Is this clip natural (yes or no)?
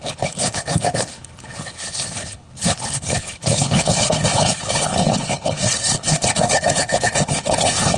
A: no